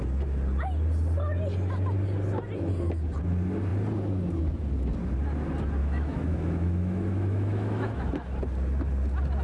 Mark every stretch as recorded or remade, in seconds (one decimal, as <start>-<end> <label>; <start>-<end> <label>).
0.0-5.8 recorded; 5.8-8.1 remade; 8.1-9.4 recorded